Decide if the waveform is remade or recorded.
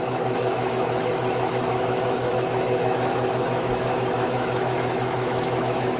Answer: remade